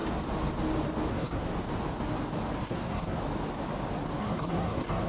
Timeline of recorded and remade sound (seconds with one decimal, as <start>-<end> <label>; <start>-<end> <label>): 0.0-1.1 recorded; 1.1-1.5 remade; 1.5-2.6 recorded; 2.6-3.2 remade; 3.2-4.2 recorded; 4.2-5.1 remade